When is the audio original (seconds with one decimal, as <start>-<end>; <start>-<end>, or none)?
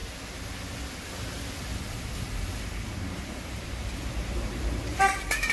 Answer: 0.0-1.8